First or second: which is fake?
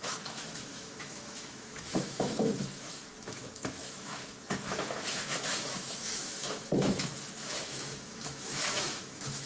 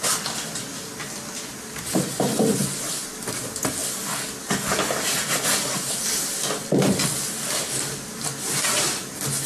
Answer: first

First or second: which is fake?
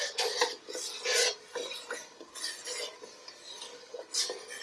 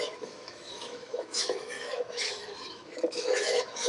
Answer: second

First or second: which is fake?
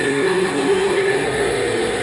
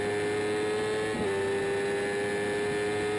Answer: first